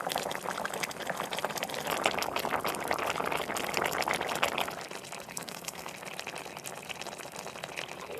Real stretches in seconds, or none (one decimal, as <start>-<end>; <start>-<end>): 0.0-5.3; 5.9-8.2